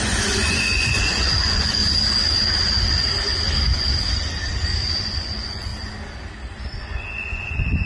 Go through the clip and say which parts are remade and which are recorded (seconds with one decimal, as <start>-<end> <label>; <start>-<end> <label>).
0.0-1.8 remade; 1.8-5.0 recorded; 5.0-5.7 remade; 5.7-6.8 recorded; 6.8-7.9 remade